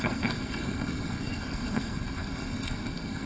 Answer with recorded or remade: remade